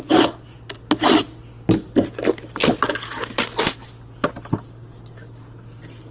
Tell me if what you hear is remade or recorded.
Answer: recorded